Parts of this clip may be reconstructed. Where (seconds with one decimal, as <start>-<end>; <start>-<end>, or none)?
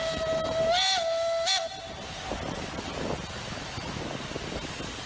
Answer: none